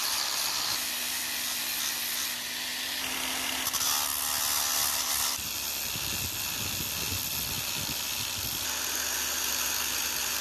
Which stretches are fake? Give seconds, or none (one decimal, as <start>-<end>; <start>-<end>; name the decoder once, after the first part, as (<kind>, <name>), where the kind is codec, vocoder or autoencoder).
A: none